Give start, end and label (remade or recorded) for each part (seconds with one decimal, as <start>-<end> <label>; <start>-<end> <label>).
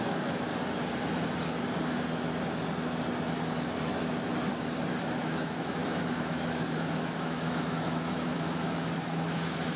0.0-0.5 remade; 0.5-5.0 recorded; 5.0-9.8 remade